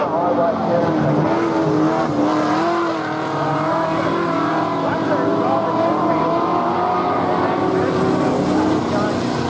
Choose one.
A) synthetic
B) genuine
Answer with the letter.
B